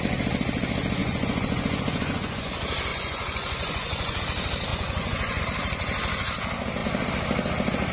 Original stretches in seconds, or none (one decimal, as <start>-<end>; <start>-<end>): 0.0-1.0; 2.5-2.9; 4.2-4.7; 5.4-7.9